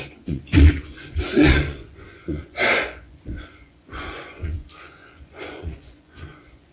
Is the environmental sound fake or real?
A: fake